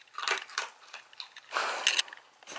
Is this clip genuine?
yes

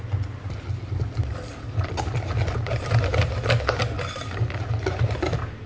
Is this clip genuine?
yes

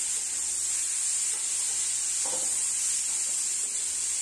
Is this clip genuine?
yes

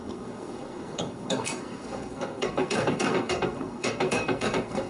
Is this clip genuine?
no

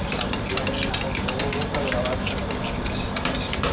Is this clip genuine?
yes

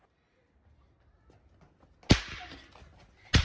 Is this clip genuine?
yes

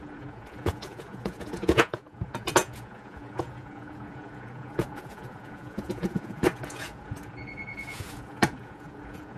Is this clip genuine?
no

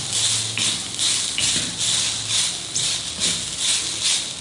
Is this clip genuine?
yes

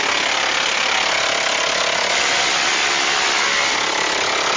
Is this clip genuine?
yes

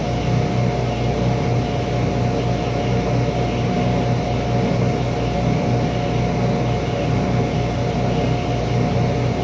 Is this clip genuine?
yes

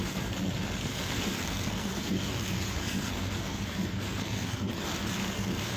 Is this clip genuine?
no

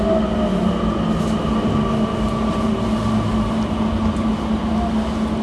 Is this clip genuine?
yes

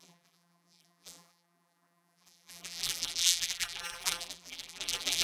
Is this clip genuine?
no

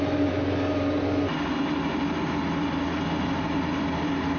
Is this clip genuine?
yes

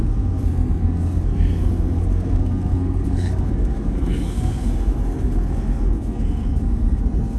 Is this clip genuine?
no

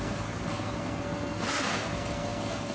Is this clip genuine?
no